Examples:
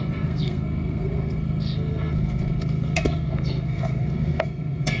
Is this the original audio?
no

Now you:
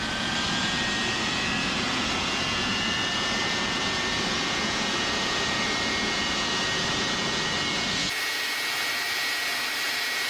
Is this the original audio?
no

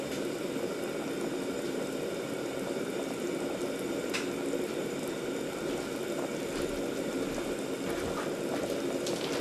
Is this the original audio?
yes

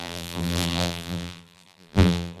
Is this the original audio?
no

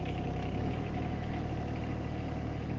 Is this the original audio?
no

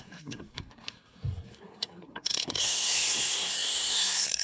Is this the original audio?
no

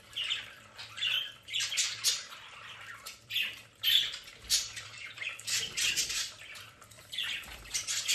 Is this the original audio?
no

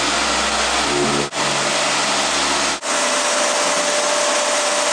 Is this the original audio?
yes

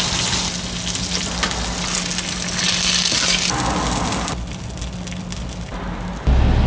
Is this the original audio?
yes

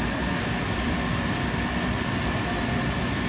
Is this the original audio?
no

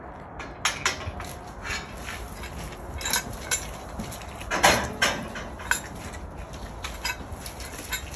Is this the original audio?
yes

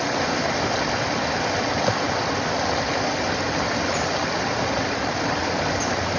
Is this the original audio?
yes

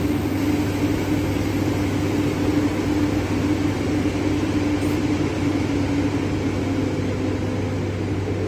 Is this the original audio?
yes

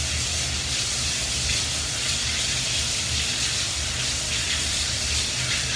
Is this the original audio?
no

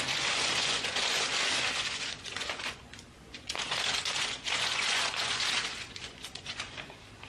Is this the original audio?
no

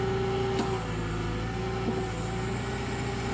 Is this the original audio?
yes